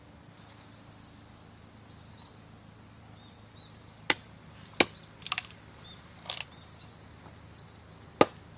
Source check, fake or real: real